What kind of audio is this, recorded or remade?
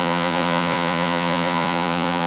remade